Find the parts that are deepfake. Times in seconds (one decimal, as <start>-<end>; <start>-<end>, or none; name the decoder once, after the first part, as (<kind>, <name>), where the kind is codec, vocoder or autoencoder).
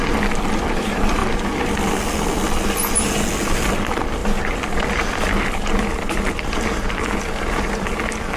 none